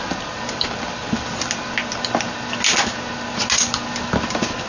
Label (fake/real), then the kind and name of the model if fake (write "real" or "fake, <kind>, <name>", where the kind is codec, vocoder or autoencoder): real